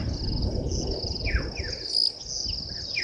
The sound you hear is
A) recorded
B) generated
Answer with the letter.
A